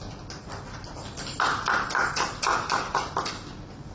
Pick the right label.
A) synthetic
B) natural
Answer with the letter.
B